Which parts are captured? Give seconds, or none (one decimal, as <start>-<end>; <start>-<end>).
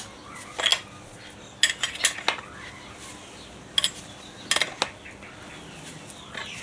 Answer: 0.0-6.6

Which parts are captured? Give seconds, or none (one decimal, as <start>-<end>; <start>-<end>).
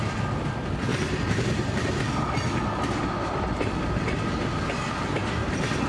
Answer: 0.0-5.9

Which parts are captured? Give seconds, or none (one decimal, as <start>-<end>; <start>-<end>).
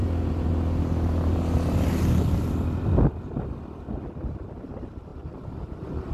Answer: 0.0-6.1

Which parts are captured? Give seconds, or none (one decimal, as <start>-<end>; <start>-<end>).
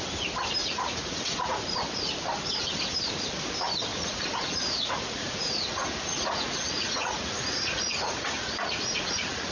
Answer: 0.0-0.6; 1.6-3.9